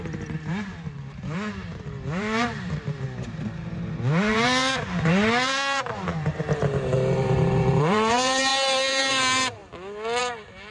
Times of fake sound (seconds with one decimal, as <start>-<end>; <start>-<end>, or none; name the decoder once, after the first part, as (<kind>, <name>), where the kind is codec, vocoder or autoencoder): 0.0-9.6 (vocoder, BigVGAN v2); 10.2-10.7